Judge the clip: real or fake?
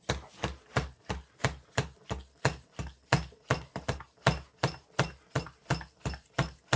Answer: real